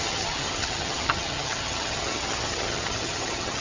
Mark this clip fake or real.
fake